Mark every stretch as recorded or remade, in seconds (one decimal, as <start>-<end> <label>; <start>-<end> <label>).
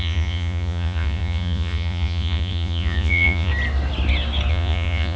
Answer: 0.0-3.5 remade; 3.5-4.5 recorded; 4.5-5.2 remade